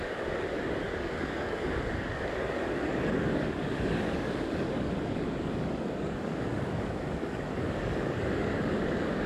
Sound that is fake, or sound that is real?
fake